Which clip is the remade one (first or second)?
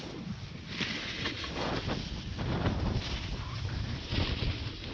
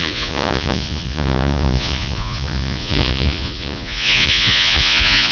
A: second